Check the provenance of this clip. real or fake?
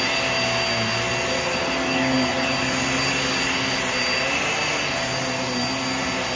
real